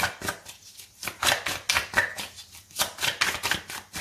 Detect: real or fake real